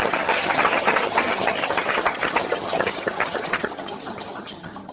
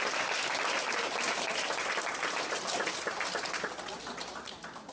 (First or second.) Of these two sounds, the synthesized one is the first